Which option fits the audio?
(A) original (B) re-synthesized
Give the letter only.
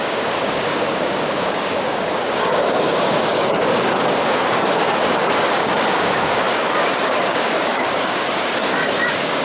B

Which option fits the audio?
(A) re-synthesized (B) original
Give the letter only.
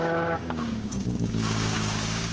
A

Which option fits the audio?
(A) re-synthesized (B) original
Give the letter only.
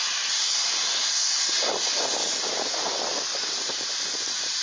B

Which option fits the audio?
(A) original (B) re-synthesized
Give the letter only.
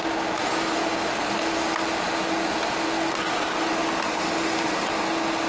A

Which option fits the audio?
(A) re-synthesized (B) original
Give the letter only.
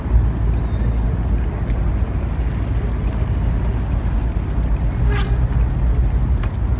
B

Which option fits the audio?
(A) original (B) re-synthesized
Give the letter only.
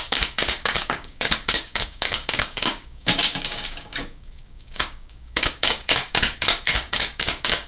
B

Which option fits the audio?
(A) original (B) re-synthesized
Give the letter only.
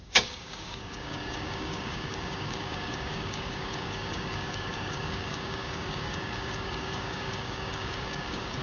B